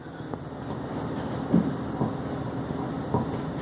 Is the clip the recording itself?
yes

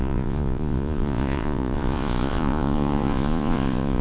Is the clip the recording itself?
no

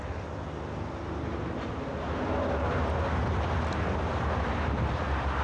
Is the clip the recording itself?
yes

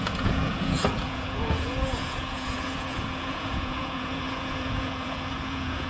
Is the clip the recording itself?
no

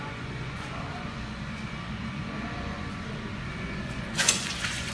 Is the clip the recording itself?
no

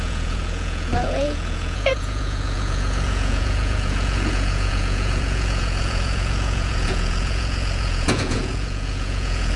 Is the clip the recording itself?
no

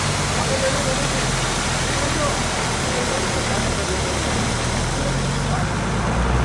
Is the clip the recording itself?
yes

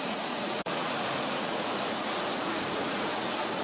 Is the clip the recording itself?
no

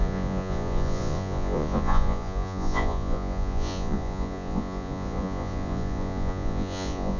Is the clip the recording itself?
no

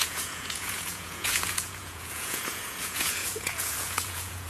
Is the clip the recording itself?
no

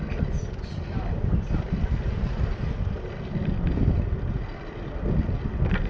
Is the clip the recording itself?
yes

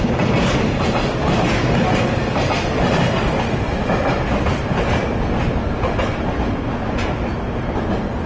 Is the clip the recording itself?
yes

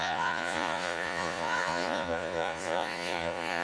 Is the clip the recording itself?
no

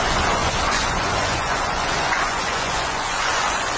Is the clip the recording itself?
no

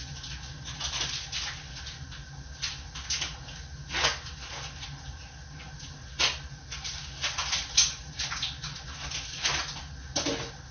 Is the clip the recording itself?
yes